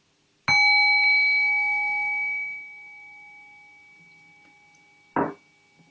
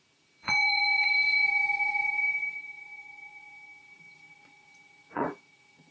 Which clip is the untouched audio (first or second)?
first